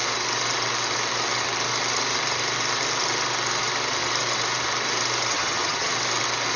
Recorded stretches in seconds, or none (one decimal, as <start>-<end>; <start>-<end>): 0.0-5.3; 5.9-6.6